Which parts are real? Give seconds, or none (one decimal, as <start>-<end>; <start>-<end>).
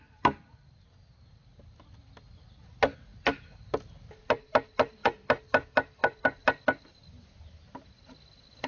0.0-8.7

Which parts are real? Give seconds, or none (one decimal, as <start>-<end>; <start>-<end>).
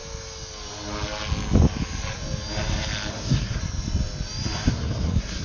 0.0-3.1; 3.6-4.7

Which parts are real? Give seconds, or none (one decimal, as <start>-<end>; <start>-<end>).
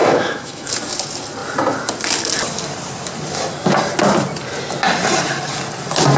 0.7-6.2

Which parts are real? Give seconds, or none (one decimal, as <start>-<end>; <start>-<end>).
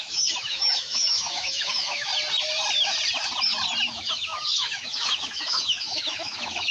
2.1-3.9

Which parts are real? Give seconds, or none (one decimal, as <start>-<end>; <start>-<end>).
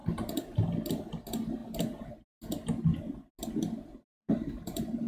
0.6-4.1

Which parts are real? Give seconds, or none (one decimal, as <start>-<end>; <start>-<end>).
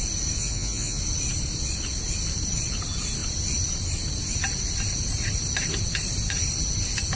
0.0-0.4; 1.0-7.2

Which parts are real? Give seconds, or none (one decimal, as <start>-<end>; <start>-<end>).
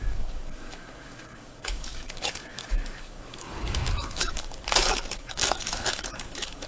none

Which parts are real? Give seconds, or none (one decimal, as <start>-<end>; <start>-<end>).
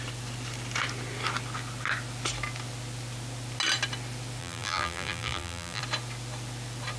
0.0-4.4; 5.8-7.0